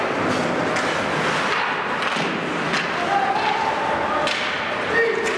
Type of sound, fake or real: real